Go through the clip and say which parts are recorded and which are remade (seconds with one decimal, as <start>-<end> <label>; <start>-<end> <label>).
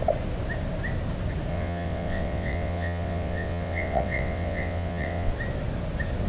0.0-1.5 recorded; 1.5-5.3 remade; 5.3-6.3 recorded